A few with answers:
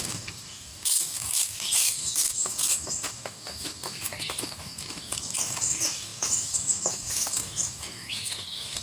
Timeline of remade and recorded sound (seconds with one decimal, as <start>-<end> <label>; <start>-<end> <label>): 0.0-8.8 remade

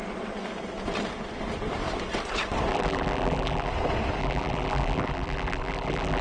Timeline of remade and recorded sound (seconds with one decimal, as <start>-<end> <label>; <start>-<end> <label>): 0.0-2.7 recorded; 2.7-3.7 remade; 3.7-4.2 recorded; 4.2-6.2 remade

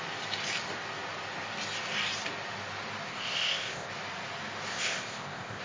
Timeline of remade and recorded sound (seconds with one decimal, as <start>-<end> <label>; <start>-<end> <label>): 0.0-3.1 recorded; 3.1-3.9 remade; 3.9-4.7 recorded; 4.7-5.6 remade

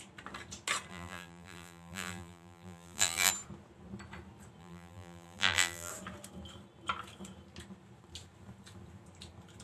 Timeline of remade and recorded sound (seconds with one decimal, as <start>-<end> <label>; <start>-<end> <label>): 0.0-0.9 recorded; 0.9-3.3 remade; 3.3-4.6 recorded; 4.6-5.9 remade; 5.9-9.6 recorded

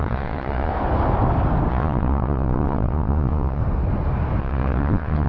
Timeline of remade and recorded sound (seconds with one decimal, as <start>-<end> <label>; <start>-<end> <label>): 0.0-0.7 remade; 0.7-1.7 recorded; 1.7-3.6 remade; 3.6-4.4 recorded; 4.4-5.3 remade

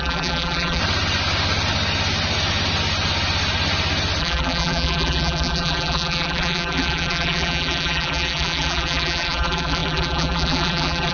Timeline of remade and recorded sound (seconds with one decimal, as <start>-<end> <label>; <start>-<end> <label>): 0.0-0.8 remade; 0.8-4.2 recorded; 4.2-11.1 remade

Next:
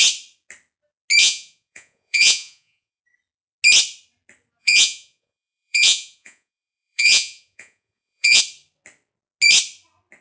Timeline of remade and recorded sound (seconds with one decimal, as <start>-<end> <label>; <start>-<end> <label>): 0.0-1.2 recorded; 1.2-3.0 remade; 3.0-4.6 recorded; 4.6-8.4 remade; 8.4-10.2 recorded